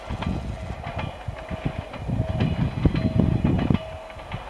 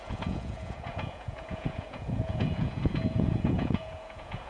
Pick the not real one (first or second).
second